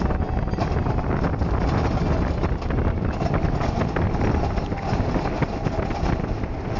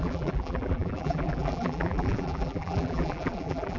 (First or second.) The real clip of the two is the first